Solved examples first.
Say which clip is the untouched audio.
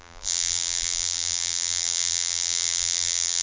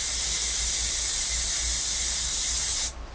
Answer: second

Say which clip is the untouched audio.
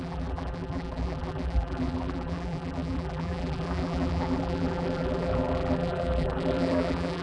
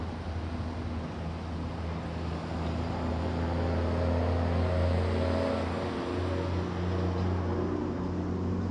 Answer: second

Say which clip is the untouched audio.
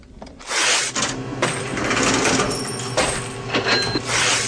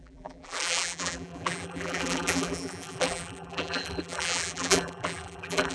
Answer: first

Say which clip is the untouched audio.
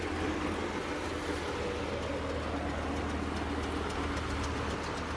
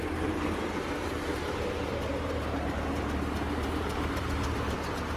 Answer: first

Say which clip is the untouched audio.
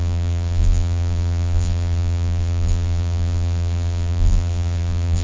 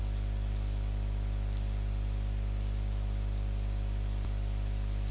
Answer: second